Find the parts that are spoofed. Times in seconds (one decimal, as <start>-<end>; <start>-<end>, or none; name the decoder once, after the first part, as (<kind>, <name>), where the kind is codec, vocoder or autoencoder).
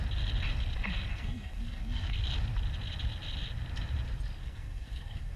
1.1-2.2 (codec, SNAC); 4.4-5.4